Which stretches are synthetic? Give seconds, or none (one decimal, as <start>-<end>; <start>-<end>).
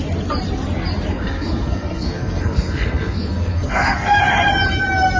1.1-4.2